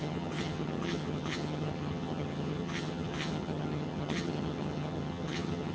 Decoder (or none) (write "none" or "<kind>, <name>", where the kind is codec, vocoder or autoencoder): vocoder, HiFi-GAN